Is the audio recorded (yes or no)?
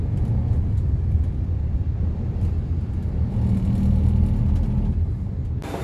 yes